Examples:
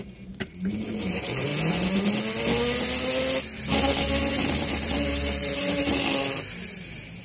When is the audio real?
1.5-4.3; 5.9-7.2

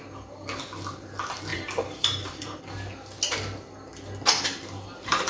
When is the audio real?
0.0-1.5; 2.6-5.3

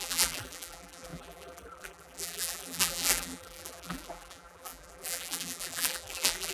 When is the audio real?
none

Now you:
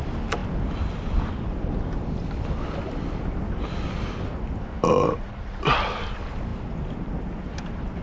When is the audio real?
0.0-8.0

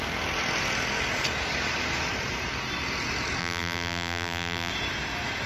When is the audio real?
0.0-3.4; 4.7-5.5

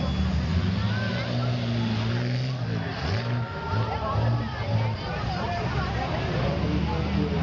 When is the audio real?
0.0-2.9; 6.6-7.4

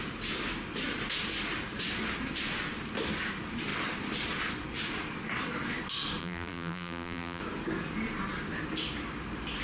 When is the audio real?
0.0-6.2; 7.4-9.6

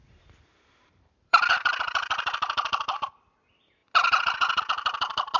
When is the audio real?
3.2-5.4